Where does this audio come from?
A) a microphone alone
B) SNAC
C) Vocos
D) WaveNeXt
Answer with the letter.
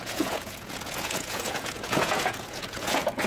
C